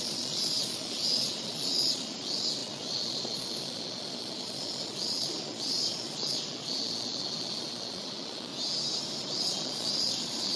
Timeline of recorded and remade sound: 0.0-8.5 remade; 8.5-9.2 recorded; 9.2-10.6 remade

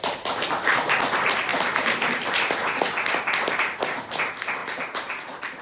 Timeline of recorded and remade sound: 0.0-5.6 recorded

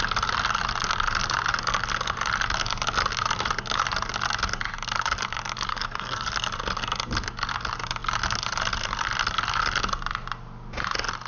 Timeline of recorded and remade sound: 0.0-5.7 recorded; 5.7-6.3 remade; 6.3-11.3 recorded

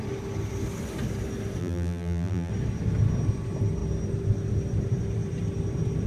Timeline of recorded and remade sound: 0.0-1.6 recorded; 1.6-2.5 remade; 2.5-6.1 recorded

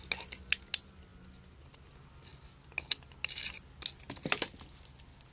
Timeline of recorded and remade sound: 0.0-5.3 recorded

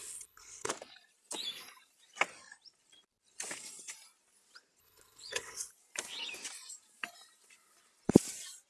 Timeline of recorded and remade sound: 0.0-0.7 remade; 0.7-4.8 recorded; 4.8-5.7 remade; 5.7-8.7 recorded

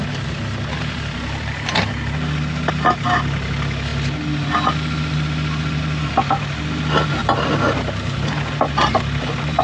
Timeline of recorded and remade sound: 0.0-9.6 recorded

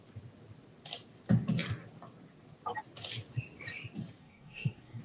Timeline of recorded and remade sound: 0.0-4.2 recorded; 4.2-5.0 remade